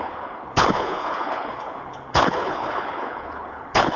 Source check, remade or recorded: remade